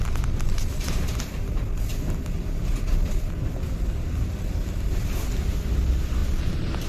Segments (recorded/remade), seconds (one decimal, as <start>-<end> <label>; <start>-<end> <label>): 0.0-6.9 recorded